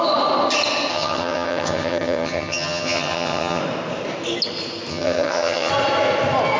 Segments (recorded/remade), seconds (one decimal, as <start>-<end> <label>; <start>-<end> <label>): 0.0-0.9 recorded; 0.9-3.6 remade; 3.6-4.9 recorded; 4.9-5.7 remade; 5.7-6.6 recorded